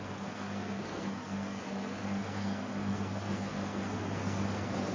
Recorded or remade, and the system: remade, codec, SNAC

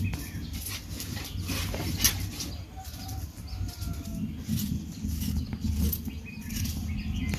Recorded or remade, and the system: recorded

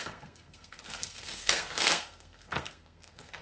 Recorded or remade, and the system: remade, codec, SNAC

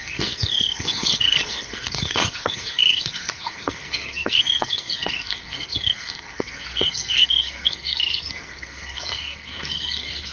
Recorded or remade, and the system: remade, codec, SNAC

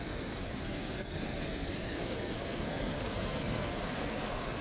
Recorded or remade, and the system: remade, codec, SNAC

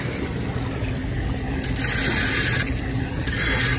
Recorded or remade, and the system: recorded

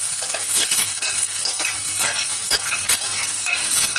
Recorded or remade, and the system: remade, codec, SNAC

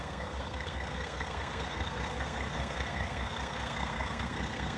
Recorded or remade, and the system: remade, codec, SNAC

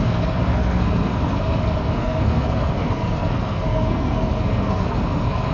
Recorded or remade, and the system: remade, codec, SNAC